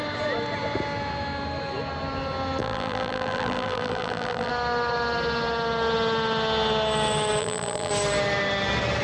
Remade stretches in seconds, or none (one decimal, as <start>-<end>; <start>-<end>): 2.6-4.5; 7.4-7.9